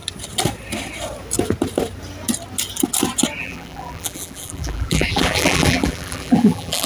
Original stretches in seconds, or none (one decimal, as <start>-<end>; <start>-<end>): 0.0-3.4